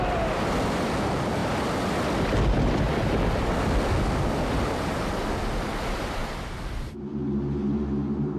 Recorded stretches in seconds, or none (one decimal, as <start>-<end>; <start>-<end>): 0.0-8.4

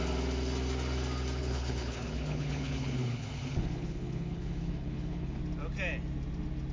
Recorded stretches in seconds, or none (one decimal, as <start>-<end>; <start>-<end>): 0.0-1.4; 5.4-6.7

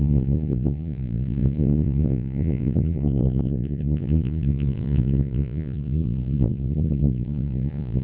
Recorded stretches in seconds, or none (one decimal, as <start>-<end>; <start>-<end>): none

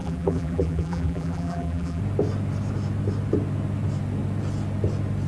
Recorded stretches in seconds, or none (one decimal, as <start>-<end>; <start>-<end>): 2.0-5.3

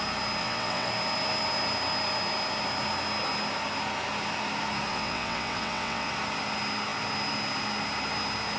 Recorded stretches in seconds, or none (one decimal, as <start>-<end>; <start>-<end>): 0.0-0.4; 0.9-4.9; 6.1-8.6

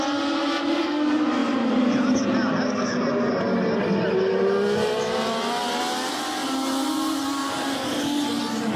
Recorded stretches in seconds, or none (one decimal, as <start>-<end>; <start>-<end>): 0.0-1.4; 2.1-7.4; 8.4-8.8

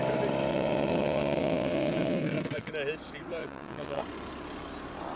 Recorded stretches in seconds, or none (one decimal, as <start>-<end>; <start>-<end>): 0.0-0.5; 2.7-3.4; 4.0-5.2

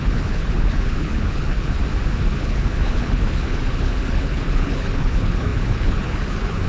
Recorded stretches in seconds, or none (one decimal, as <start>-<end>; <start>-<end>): 1.8-2.4